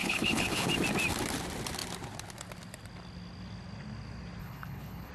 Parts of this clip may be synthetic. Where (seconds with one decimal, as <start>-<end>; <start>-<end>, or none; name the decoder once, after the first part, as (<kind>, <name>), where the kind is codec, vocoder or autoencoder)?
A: 0.0-0.7 (codec, HILCodec); 4.4-5.1